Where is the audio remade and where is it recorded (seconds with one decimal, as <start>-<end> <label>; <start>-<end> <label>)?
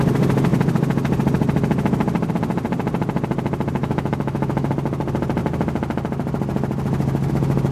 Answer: 0.0-3.8 recorded; 3.8-4.7 remade; 4.7-7.7 recorded